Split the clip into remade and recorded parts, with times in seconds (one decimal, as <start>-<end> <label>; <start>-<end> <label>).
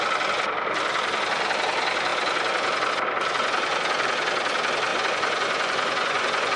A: 0.0-4.9 recorded; 4.9-6.6 remade